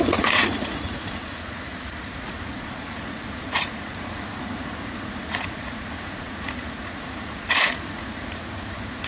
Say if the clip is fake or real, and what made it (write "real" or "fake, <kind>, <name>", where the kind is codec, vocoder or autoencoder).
fake, vocoder, Vocos